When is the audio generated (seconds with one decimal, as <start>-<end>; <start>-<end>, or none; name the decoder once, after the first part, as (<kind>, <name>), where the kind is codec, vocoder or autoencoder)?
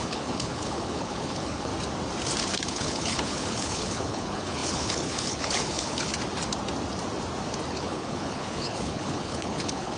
0.0-1.7 (codec, HILCodec); 2.7-6.1; 7.7-10.0